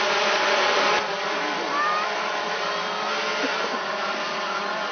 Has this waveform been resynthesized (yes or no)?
yes